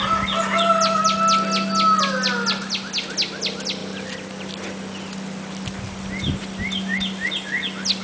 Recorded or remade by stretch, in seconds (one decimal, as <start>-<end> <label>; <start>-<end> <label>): 0.0-8.0 recorded